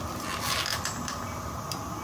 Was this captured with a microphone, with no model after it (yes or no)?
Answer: yes